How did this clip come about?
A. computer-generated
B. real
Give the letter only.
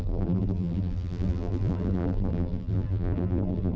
A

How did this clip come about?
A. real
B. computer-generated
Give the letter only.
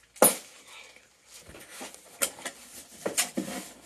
A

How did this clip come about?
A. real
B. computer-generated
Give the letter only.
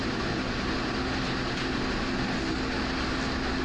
A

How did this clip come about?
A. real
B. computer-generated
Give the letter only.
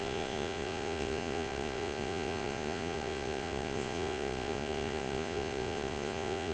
B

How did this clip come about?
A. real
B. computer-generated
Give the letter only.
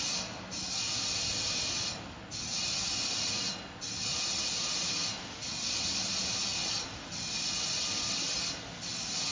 A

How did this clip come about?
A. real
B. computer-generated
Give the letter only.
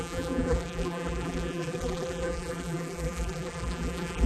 B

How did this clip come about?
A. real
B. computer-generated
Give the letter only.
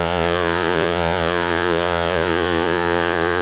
B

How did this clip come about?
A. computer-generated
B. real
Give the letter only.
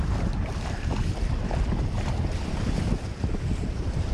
A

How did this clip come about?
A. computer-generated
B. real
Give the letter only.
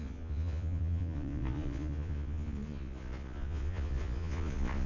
A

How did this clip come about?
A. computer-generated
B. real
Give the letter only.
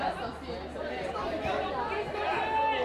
B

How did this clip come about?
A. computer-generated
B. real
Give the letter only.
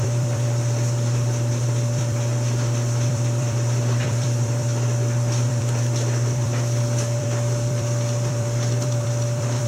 A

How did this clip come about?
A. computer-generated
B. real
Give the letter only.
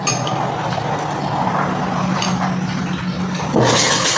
B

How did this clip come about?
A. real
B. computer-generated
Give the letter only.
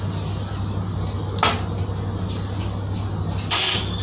A